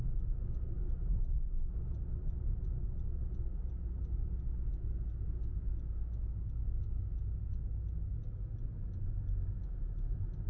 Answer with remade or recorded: recorded